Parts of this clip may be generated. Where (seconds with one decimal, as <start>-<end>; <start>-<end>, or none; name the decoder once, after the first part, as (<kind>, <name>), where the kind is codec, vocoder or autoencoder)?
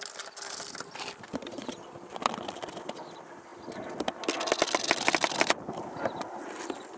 0.0-3.5 (vocoder, BigVGAN v2); 5.1-7.0